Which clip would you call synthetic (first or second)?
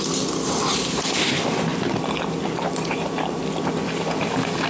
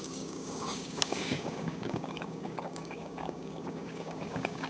second